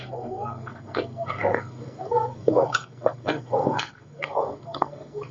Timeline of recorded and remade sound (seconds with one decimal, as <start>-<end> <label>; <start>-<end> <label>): 0.0-5.3 remade